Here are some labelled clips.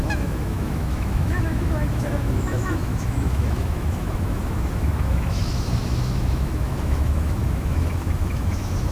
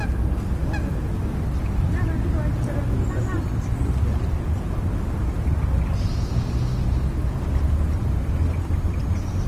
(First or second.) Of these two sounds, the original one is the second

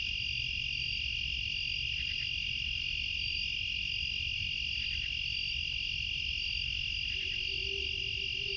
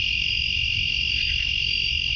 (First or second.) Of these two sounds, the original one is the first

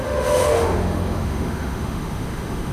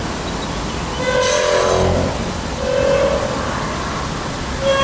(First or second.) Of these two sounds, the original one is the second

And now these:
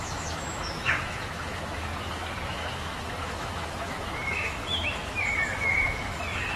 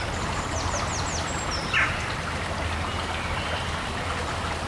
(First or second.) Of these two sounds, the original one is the second